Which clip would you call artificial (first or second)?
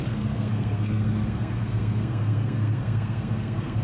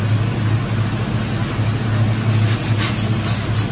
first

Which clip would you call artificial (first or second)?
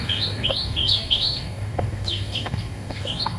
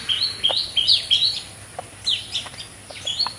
first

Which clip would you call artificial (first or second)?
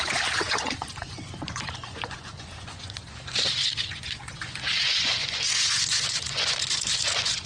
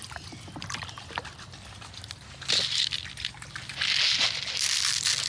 first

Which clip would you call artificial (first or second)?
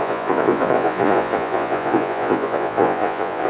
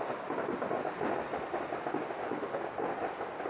first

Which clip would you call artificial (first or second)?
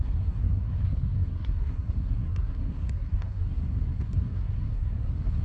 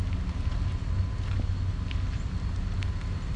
first